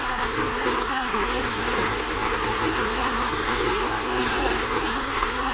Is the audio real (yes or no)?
no